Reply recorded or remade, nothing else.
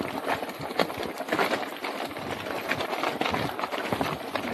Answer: recorded